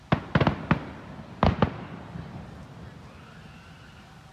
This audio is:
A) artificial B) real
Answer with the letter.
B